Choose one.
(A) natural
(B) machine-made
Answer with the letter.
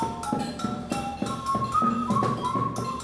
A